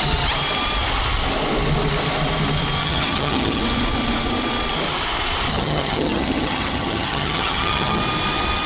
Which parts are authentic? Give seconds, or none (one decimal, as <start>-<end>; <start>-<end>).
0.0-2.8; 3.6-5.5; 8.0-8.7